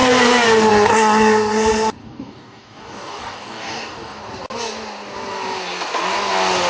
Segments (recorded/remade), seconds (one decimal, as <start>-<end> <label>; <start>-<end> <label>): 0.0-2.0 recorded; 2.0-4.2 remade; 4.2-6.7 recorded